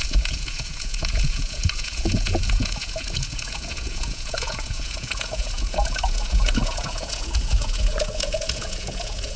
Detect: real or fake fake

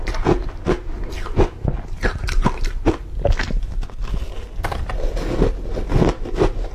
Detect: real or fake real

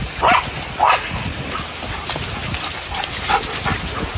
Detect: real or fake real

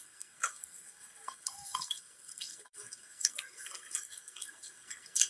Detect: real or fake fake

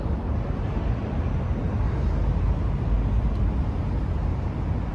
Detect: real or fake real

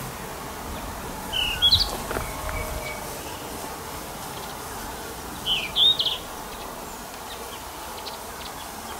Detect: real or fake real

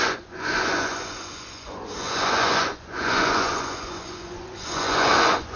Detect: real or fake fake